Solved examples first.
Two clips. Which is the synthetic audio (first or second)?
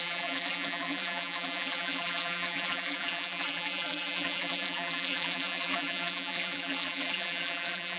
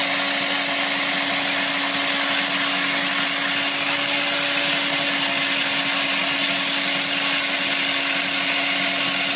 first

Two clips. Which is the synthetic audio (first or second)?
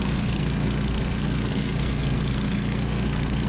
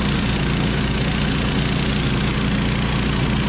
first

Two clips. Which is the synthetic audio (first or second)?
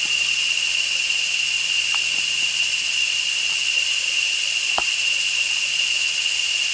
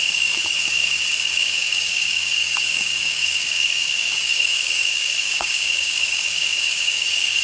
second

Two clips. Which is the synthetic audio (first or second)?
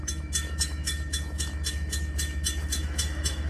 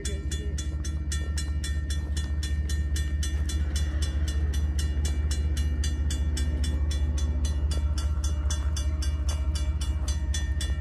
first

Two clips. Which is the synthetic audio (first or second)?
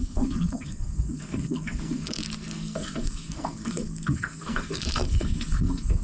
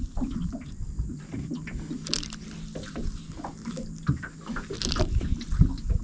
first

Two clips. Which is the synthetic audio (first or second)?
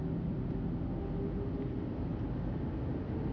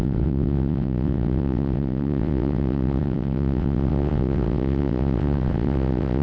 second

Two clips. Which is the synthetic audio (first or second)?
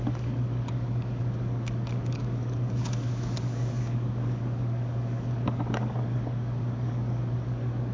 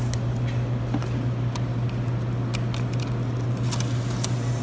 first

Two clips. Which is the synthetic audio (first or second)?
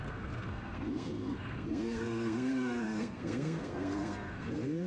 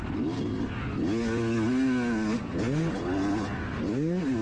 first